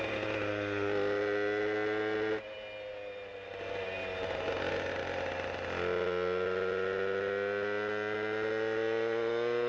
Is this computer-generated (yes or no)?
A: no